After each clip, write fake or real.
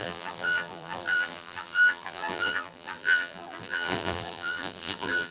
fake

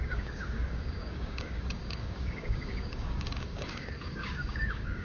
fake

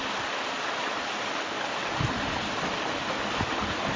real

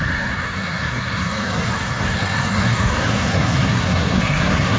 fake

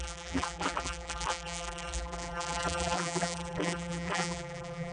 fake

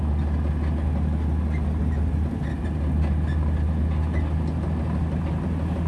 real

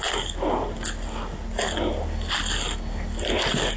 real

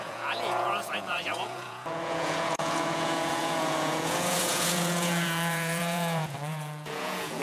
fake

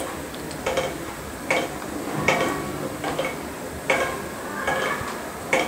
real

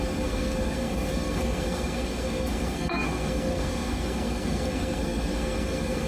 fake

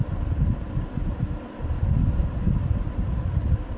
real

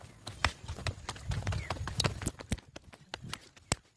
real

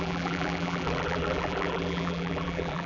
fake